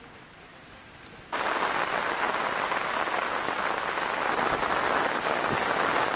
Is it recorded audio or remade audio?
recorded